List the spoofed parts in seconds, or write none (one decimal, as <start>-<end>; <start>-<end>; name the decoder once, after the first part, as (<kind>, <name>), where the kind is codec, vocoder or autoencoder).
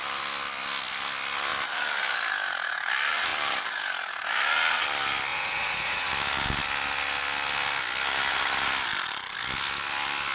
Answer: 5.3-6.1 (vocoder, Vocos)